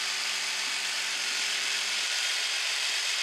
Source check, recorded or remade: remade